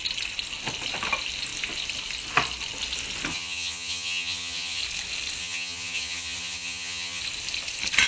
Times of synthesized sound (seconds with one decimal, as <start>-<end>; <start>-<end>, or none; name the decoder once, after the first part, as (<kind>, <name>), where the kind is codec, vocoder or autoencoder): 3.3-4.8 (vocoder, HiFi-GAN); 5.4-7.2